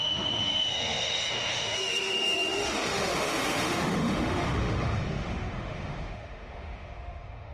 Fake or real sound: fake